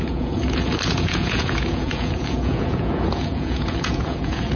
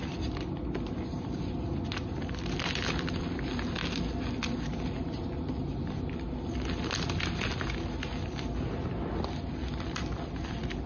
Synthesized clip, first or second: first